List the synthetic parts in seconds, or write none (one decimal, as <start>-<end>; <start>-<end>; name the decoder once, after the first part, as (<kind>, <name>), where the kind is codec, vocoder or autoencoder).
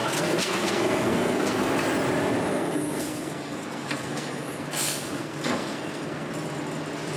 0.0-1.7 (codec, SNAC); 2.5-6.3